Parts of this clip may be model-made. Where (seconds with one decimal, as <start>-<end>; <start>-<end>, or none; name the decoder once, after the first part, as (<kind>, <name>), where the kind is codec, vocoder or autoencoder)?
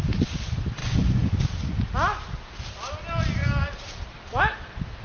0.8-1.4 (vocoder, Vocos)